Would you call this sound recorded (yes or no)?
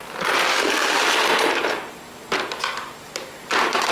yes